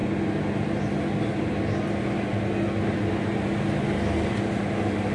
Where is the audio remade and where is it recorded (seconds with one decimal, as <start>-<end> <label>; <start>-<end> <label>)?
0.0-5.1 recorded